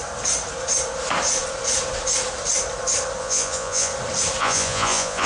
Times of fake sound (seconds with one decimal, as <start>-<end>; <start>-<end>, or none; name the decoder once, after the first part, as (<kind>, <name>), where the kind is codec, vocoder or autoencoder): 3.2-3.9 (vocoder, Vocos); 4.4-5.3